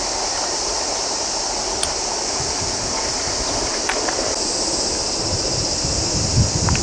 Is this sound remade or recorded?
recorded